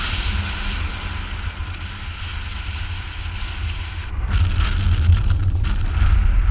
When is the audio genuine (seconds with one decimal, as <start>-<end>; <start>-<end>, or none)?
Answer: 0.0-6.5